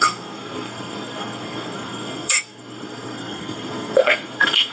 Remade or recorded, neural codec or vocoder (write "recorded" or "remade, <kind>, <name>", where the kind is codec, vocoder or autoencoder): remade, codec, SNAC